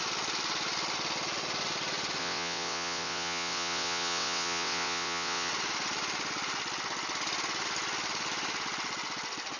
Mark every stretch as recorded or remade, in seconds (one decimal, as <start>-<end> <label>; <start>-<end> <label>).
0.0-2.2 recorded; 2.2-5.5 remade; 5.5-9.6 recorded